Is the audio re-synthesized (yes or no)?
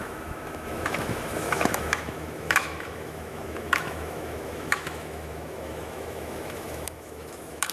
yes